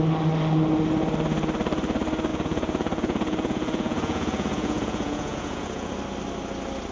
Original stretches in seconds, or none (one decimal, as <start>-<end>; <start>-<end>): 0.0-2.3; 5.9-6.9